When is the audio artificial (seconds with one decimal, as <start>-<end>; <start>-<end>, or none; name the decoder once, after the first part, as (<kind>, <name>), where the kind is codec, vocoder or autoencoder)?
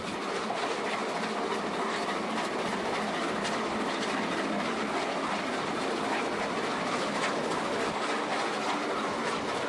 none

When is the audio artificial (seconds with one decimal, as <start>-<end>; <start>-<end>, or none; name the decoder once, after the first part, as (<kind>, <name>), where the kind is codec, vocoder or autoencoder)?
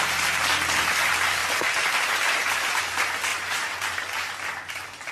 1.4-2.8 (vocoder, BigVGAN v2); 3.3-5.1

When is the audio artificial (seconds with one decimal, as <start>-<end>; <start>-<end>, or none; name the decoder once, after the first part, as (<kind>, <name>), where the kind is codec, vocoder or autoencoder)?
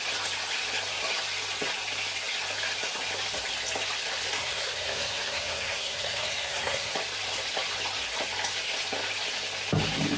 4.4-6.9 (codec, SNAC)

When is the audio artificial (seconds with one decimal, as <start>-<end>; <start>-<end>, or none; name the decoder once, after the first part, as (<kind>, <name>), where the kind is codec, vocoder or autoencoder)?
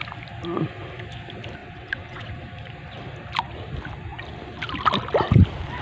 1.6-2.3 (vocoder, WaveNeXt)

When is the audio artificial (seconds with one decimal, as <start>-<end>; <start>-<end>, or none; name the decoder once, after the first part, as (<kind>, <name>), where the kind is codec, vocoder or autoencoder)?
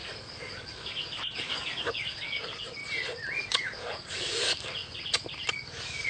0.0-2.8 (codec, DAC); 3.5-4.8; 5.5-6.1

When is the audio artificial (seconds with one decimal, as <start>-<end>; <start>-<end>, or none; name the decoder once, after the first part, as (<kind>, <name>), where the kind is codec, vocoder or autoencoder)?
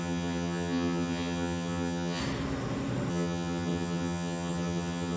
0.0-2.2 (vocoder, HiFi-GAN); 3.1-5.2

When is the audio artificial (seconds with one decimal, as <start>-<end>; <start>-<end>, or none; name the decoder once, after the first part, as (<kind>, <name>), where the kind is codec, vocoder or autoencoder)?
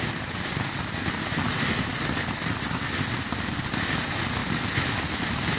none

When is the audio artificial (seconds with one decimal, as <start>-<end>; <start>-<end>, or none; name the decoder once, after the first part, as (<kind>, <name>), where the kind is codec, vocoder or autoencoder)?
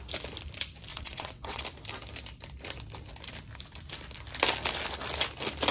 0.9-1.6 (vocoder, WaveNeXt)